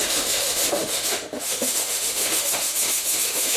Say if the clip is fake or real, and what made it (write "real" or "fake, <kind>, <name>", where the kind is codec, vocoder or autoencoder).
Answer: fake, autoencoder, DAC-VAE